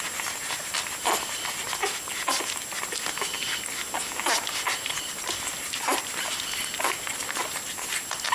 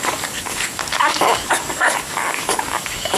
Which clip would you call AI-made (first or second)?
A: second